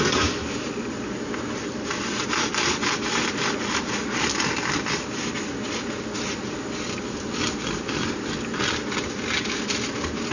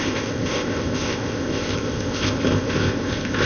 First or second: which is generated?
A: second